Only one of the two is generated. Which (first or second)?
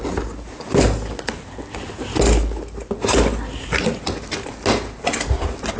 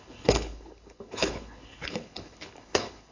second